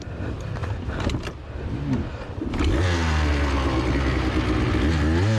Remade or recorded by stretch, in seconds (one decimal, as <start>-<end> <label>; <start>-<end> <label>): 0.0-5.4 recorded